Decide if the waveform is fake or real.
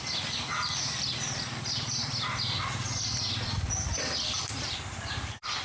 fake